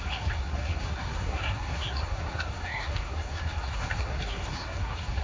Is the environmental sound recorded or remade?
remade